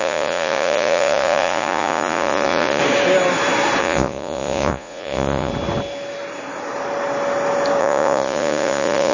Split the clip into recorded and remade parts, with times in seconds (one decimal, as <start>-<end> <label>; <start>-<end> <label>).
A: 0.0-2.8 remade; 2.8-3.8 recorded; 3.8-5.5 remade; 5.5-7.8 recorded; 7.8-9.1 remade